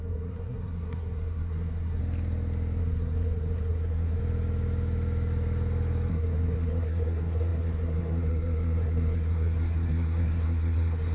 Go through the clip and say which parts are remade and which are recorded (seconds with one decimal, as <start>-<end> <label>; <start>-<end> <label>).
0.0-2.0 remade; 2.0-2.8 recorded; 2.8-4.2 remade; 4.2-6.1 recorded; 6.1-11.1 remade